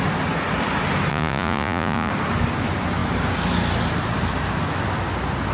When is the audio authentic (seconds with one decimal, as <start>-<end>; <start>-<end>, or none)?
0.0-1.1; 2.1-5.5